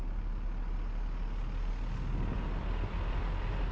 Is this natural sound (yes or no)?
yes